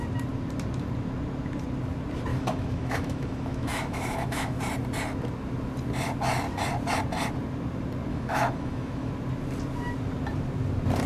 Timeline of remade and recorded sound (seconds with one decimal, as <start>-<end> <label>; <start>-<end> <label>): 0.0-2.3 recorded; 2.3-4.6 remade; 4.6-8.1 recorded; 8.1-9.1 remade; 9.1-11.1 recorded